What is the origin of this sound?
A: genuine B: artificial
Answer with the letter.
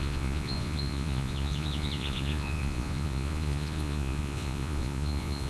B